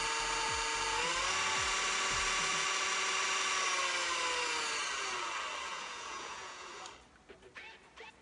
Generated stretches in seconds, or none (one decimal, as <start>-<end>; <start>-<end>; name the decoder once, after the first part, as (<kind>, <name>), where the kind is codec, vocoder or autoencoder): 5.7-6.7 (vocoder, Vocos)